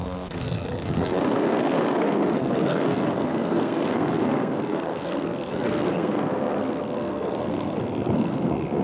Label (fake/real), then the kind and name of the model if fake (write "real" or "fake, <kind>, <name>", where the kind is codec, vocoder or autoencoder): fake, codec, SNAC